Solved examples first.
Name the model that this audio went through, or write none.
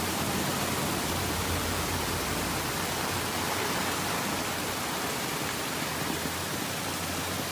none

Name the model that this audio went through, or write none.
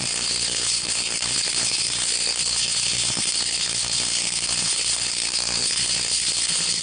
codec, SNAC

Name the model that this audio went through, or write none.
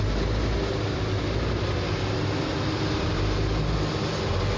none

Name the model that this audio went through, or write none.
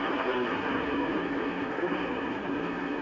codec, SNAC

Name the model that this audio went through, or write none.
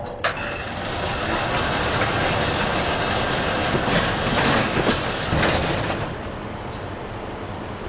none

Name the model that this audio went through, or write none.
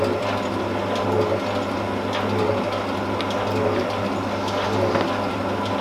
none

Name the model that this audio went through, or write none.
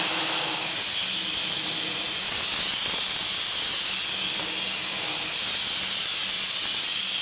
none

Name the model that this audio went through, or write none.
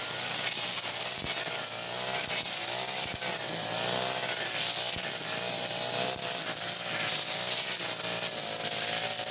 none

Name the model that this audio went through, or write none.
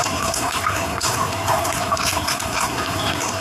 codec, SNAC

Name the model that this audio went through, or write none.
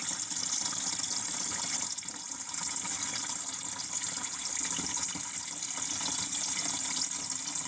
none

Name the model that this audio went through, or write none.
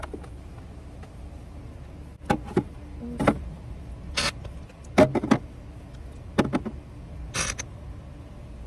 none